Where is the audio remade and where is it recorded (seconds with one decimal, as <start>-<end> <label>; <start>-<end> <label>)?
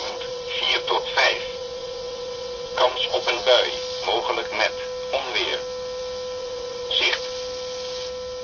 0.0-3.4 remade; 3.4-6.4 recorded; 6.4-7.2 remade; 7.2-8.4 recorded